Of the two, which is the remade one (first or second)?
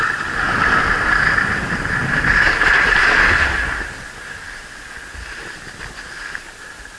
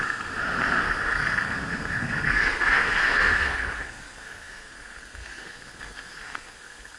second